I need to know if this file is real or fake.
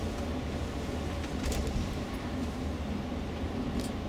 real